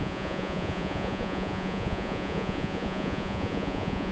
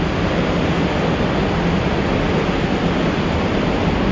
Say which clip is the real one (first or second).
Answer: second